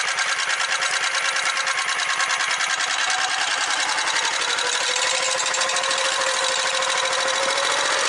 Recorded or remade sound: recorded